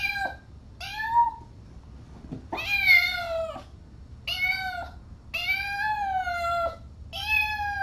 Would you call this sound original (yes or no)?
yes